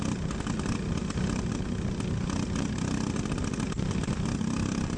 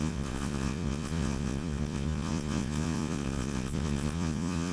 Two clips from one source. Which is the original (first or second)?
first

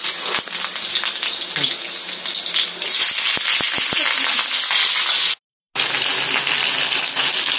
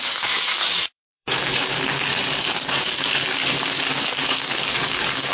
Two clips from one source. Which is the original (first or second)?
first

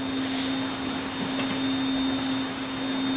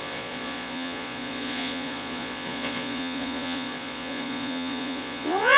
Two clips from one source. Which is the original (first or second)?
first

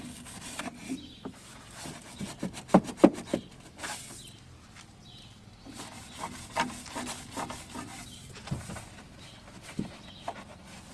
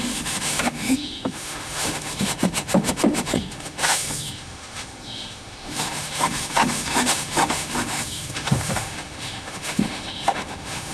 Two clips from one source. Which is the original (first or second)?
first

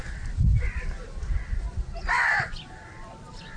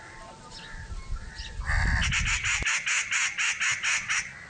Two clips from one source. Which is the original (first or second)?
second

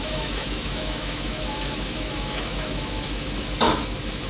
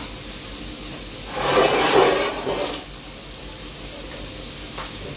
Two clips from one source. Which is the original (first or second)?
second